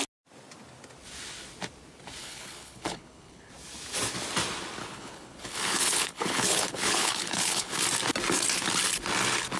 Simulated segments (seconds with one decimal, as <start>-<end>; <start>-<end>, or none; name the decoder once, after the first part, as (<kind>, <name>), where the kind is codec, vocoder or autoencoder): 2.2-3.5 (codec, HILCodec); 4.8-7.8